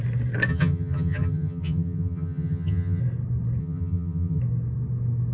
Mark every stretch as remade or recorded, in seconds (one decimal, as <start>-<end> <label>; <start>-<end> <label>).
0.0-0.5 recorded; 0.5-3.0 remade; 3.0-3.6 recorded; 3.6-4.4 remade; 4.4-5.3 recorded